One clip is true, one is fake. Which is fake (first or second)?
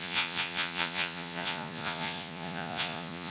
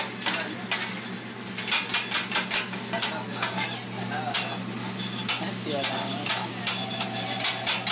first